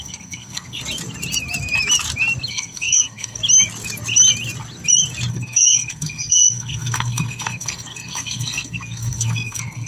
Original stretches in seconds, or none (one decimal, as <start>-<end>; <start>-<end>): 0.8-2.5; 3.4-5.3